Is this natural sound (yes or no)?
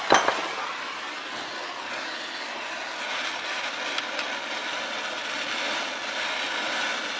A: yes